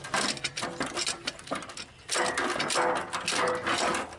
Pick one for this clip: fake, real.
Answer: real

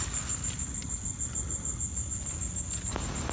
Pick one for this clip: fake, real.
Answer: real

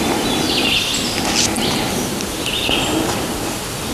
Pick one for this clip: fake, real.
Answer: real